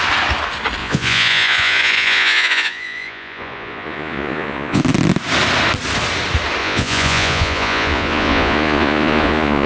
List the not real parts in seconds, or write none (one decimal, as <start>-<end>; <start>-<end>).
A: 0.8-4.8; 6.6-9.7